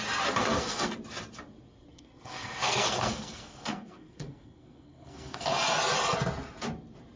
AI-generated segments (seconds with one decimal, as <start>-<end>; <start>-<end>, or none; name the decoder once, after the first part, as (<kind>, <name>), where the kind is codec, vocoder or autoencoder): 0.4-0.9 (codec, SNAC); 1.9-5.5